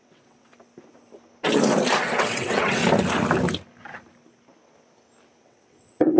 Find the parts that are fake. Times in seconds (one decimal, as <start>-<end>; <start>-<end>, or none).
0.0-0.5; 2.2-2.8; 5.4-6.2